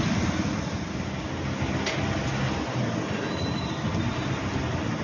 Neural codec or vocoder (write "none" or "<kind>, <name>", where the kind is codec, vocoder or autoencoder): none